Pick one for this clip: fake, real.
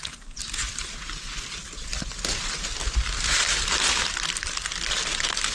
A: real